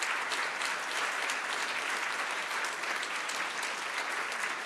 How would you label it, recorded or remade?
recorded